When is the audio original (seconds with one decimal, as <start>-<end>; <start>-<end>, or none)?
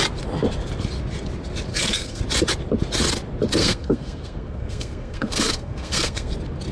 0.0-1.7; 2.2-3.6; 6.3-6.7